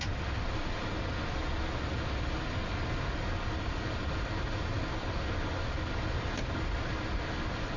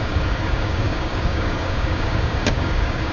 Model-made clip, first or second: second